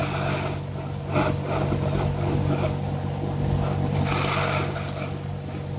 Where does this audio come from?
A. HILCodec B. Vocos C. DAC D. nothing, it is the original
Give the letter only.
D